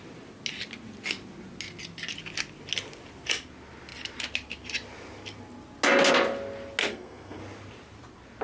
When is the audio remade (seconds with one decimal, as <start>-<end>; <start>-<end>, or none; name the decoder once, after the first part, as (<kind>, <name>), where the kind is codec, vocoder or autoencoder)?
6.9-7.4 (codec, SNAC)